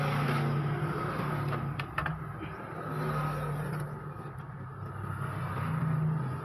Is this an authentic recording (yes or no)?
yes